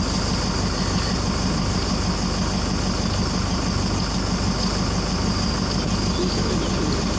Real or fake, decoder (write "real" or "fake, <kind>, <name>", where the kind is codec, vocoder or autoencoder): real